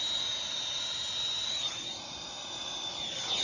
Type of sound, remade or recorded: recorded